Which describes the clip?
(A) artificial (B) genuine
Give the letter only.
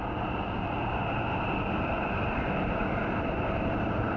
A